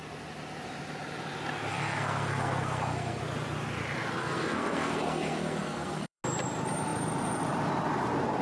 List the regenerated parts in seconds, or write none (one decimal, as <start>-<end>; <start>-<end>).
1.7-3.2; 4.2-6.2